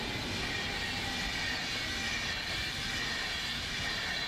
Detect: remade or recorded recorded